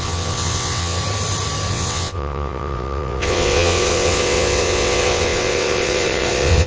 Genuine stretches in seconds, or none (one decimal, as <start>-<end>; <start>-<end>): 1.0-1.7